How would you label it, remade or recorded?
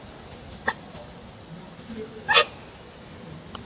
recorded